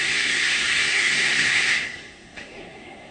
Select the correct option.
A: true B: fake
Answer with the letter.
B